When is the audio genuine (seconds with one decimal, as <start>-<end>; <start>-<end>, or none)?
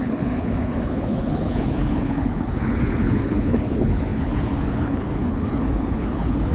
none